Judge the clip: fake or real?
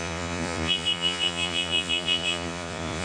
fake